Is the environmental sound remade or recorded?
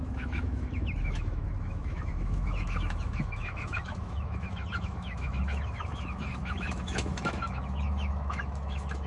remade